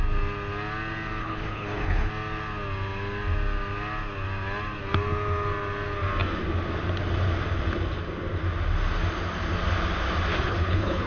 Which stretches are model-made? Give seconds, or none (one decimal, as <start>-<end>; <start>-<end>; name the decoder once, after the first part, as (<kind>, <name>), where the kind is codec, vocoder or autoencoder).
1.2-2.1 (codec, HILCodec); 10.3-11.1